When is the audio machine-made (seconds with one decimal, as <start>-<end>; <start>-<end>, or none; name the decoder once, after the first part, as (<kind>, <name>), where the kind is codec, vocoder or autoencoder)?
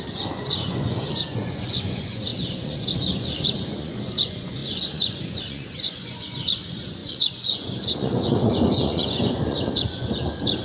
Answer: 0.0-10.6 (vocoder, Vocos)